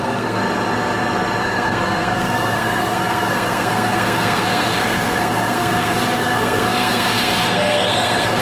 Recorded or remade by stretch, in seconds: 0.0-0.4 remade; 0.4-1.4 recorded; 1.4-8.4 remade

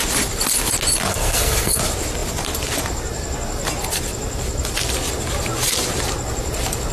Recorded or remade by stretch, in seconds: 0.0-1.1 recorded; 1.1-1.8 remade; 1.8-6.9 recorded